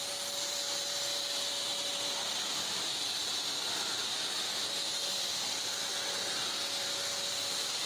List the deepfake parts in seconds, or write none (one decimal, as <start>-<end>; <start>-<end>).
0.0-1.7; 2.3-2.9; 5.5-5.9; 7.1-7.9